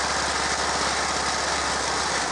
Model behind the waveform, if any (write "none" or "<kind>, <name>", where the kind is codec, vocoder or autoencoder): none